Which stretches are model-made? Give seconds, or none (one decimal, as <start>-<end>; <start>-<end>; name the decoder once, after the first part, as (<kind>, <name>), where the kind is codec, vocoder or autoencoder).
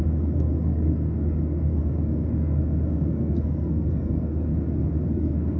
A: 0.0-4.5 (codec, SNAC); 5.1-5.6